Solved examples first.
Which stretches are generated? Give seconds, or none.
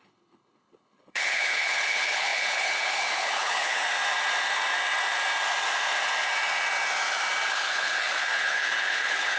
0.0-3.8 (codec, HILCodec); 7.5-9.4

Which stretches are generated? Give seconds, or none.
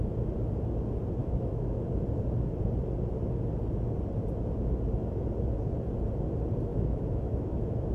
1.2-1.8 (autoencoder, DAC-VAE); 6.7-7.9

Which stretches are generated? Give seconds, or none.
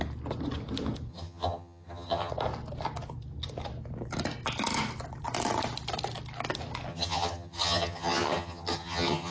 1.1-2.3 (vocoder, HiFi-GAN); 6.9-9.3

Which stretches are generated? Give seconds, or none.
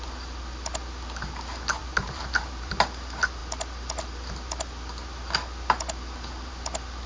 1.8-2.7 (vocoder, BigVGAN v2)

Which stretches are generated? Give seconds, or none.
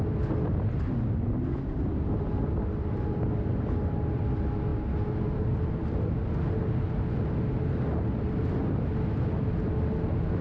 none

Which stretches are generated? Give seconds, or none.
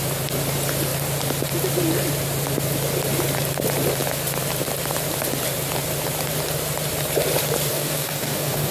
7.7-8.7 (codec, DAC)